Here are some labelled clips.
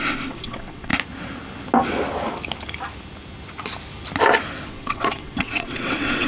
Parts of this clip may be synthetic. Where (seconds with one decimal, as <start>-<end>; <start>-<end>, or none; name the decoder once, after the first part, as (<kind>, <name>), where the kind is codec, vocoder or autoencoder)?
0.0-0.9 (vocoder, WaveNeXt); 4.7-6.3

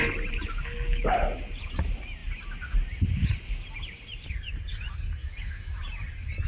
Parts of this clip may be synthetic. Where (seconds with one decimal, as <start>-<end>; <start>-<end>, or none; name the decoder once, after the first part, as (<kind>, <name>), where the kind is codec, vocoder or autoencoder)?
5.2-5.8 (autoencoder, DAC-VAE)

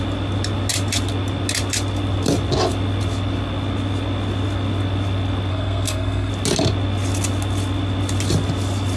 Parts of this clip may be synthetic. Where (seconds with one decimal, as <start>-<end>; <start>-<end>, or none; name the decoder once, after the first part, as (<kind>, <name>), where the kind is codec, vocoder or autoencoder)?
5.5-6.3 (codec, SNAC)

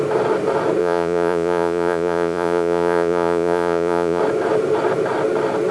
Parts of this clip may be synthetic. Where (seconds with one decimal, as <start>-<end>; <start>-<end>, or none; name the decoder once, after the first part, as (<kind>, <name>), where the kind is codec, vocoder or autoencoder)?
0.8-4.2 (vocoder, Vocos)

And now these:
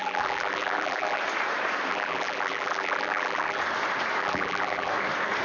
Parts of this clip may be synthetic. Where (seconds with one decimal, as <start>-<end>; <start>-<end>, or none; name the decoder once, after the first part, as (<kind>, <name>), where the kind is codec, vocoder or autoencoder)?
0.0-1.2 (vocoder, BigVGAN v2); 1.9-3.6; 4.2-4.9

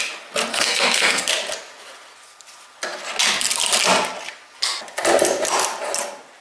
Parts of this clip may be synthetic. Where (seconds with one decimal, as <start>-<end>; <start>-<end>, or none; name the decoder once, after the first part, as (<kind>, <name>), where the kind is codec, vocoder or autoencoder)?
0.5-1.3 (codec, SNAC)